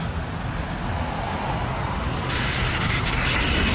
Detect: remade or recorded recorded